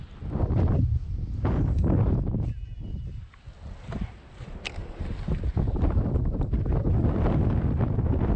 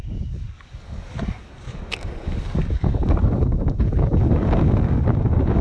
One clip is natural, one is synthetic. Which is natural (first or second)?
first